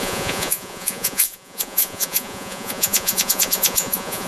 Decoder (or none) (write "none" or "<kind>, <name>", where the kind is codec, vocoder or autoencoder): vocoder, Vocos